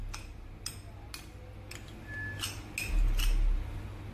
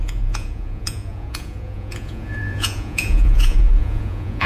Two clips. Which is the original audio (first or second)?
first